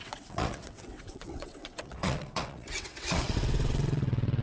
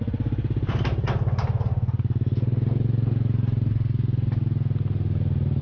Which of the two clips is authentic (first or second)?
second